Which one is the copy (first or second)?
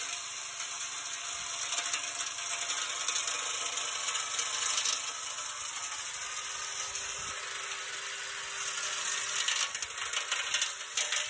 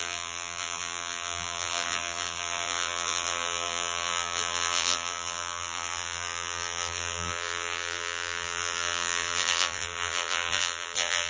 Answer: second